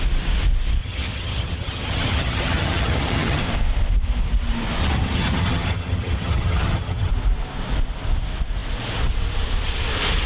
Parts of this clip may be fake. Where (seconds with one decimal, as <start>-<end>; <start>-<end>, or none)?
0.8-3.4; 4.8-7.1

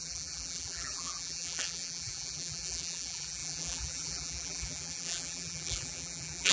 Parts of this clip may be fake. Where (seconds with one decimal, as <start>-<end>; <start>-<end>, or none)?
0.0-6.5

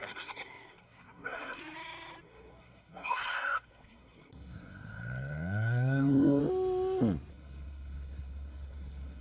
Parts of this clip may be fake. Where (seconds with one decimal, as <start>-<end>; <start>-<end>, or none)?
0.0-1.6; 2.2-6.4; 7.3-9.2

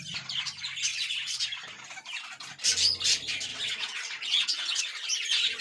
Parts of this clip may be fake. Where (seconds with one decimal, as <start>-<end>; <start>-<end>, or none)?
0.9-1.4; 3.5-4.8

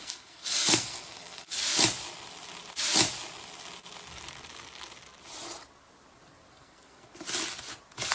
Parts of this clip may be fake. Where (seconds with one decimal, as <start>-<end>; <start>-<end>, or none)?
0.0-1.6; 6.5-7.1

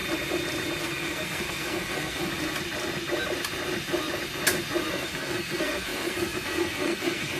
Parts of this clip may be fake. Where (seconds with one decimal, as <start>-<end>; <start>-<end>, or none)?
0.8-2.3; 4.9-7.4

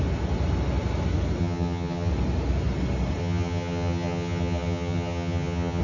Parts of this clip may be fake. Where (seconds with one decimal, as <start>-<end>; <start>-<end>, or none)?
1.4-2.1; 3.2-5.8

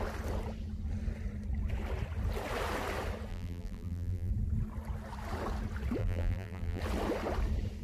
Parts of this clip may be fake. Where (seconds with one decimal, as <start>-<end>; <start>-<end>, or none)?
3.3-4.3; 6.0-6.8